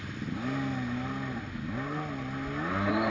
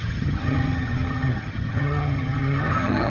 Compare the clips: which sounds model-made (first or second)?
second